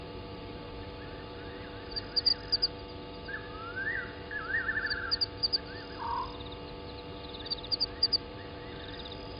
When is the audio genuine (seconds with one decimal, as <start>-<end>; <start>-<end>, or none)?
2.3-5.6; 6.1-7.6